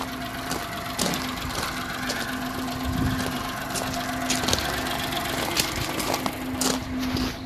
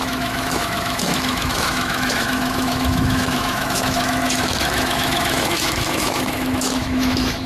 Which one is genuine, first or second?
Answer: first